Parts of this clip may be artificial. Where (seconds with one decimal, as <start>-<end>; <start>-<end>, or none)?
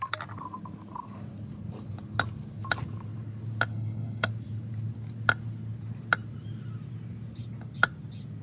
3.7-4.3